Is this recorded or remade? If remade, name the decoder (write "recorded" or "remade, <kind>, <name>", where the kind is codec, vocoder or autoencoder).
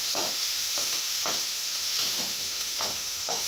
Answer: remade, autoencoder, DAC-VAE